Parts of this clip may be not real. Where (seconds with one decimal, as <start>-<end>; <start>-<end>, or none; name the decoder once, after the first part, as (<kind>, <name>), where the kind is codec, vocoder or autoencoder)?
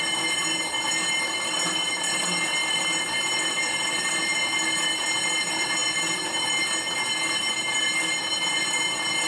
none